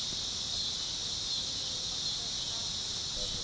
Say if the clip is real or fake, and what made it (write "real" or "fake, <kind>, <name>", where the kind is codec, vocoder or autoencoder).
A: real